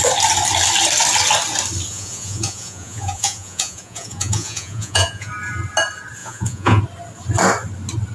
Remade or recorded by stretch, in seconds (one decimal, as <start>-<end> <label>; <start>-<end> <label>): 0.0-1.9 recorded; 1.9-5.3 remade; 5.3-6.2 recorded; 6.2-6.8 remade; 6.8-8.1 recorded